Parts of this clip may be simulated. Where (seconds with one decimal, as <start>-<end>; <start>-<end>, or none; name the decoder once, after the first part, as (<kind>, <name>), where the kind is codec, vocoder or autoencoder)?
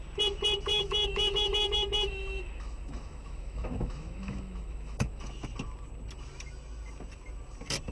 0.7-5.2 (autoencoder, DAC-VAE)